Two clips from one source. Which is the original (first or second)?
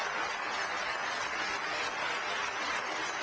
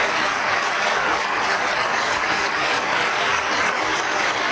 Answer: first